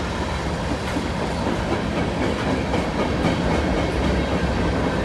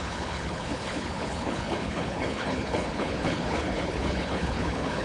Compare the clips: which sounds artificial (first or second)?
second